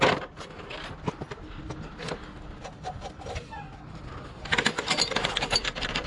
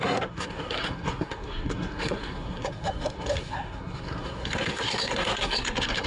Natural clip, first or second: first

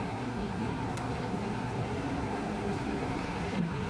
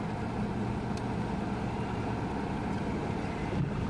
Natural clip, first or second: second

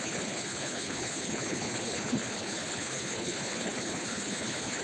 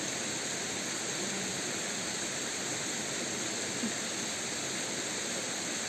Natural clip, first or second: second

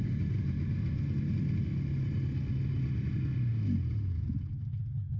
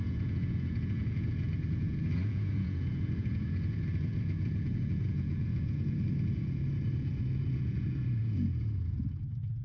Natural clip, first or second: first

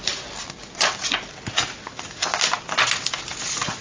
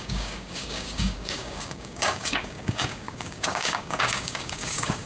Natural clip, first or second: first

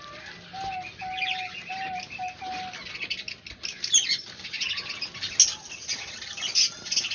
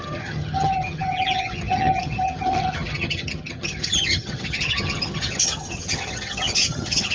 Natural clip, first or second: first